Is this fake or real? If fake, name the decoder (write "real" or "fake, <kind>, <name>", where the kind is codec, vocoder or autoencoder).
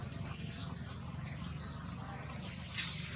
real